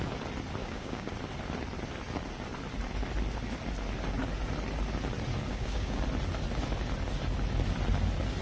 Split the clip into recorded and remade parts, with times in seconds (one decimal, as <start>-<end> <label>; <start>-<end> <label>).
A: 0.0-0.6 recorded; 0.6-1.1 remade; 1.1-5.5 recorded; 5.5-6.0 remade; 6.0-8.4 recorded